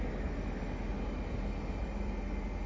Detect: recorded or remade recorded